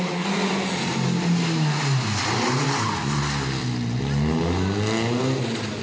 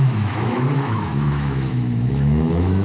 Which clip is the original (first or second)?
first